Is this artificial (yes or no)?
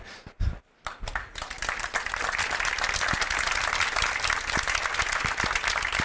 no